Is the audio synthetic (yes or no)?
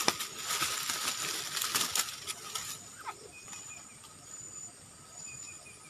no